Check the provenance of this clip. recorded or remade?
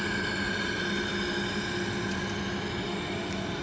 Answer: recorded